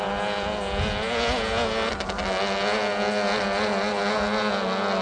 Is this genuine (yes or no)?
yes